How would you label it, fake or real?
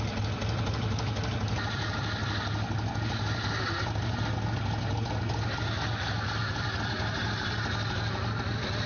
real